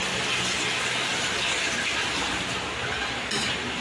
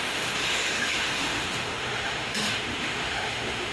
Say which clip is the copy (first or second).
second